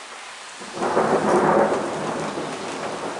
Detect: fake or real real